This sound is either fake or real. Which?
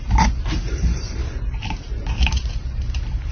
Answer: fake